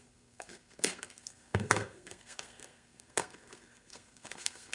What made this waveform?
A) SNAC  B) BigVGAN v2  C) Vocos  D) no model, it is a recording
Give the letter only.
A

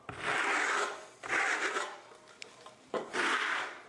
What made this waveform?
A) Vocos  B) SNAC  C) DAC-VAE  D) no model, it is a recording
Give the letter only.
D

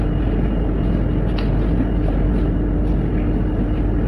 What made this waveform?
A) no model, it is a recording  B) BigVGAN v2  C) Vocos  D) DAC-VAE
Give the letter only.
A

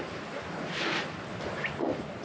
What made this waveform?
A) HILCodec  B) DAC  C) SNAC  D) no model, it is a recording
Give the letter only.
D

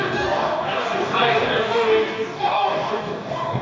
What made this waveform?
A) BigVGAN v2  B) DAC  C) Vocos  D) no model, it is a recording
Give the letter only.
B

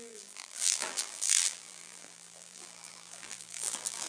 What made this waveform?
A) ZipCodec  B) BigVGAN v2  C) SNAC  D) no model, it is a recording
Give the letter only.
B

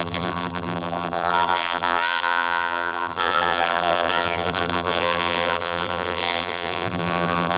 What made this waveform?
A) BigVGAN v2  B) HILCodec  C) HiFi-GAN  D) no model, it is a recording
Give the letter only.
A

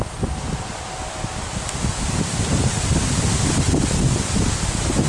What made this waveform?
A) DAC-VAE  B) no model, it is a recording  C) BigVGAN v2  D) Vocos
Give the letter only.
B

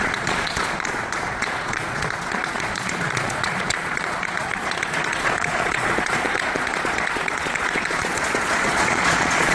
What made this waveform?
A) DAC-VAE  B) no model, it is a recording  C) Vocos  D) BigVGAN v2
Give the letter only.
C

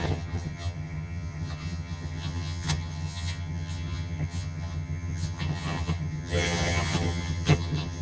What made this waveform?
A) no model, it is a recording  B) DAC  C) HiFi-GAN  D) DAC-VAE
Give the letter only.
C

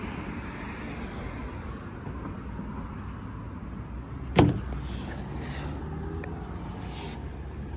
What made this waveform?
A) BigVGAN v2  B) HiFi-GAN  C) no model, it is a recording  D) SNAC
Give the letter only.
C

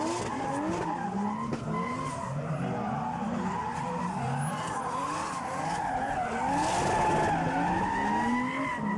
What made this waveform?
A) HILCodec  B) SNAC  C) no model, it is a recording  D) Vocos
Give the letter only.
C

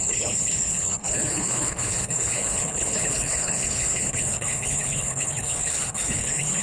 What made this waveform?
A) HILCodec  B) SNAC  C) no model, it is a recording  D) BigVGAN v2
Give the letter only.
A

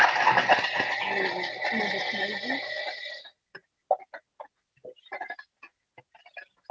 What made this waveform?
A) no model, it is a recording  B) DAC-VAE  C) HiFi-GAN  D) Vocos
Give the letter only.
A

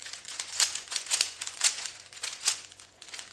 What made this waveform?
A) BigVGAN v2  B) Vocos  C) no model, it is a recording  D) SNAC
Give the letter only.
B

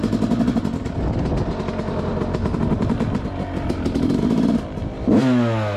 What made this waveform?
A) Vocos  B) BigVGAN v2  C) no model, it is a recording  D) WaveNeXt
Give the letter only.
C